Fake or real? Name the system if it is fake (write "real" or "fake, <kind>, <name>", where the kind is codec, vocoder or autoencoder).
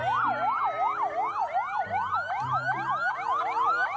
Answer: real